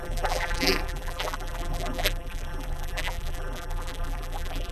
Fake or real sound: fake